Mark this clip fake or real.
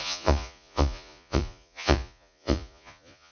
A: fake